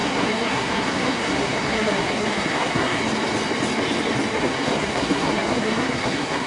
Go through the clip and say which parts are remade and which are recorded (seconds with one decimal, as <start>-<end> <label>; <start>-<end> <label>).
0.0-3.0 remade; 3.0-4.4 recorded; 4.4-6.5 remade